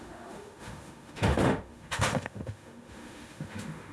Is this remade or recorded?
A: remade